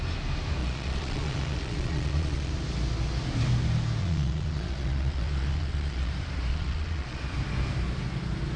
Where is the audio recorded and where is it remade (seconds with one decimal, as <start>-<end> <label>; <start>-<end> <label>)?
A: 0.0-0.6 recorded; 0.6-2.5 remade; 2.5-4.0 recorded; 4.0-6.1 remade; 6.1-6.5 recorded; 6.5-7.2 remade; 7.2-8.6 recorded